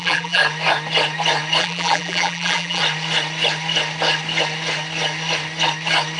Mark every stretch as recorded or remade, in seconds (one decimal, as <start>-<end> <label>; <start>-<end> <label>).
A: 0.0-0.4 remade; 0.4-1.6 recorded; 1.6-2.8 remade; 2.8-6.2 recorded

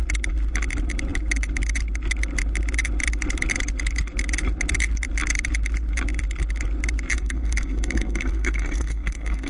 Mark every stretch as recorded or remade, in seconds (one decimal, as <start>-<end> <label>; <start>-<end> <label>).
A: 0.0-7.1 recorded; 7.1-9.5 remade

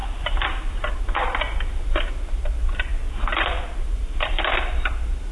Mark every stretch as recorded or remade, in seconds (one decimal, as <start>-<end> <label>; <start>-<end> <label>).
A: 0.0-2.4 remade; 2.4-4.0 recorded; 4.0-4.6 remade; 4.6-5.3 recorded